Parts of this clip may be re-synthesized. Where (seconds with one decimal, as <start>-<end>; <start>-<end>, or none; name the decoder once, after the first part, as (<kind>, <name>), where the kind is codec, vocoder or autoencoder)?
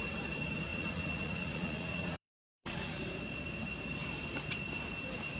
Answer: 0.7-3.0 (vocoder, Vocos)